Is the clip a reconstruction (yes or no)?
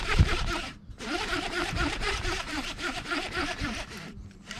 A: yes